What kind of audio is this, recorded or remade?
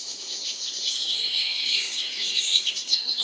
remade